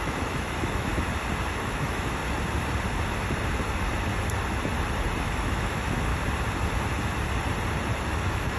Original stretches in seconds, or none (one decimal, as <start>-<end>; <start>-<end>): 0.9-1.5; 2.2-5.2; 6.1-8.1